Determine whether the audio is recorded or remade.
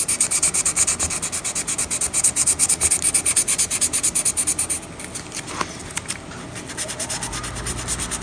recorded